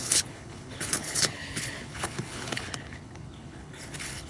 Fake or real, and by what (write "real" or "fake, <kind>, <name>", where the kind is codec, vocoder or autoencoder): fake, codec, HILCodec